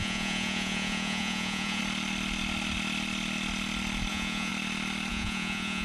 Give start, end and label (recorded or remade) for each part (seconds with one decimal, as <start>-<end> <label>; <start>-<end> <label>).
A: 0.0-1.8 remade; 1.8-4.1 recorded; 4.1-4.5 remade; 4.5-5.1 recorded; 5.1-5.8 remade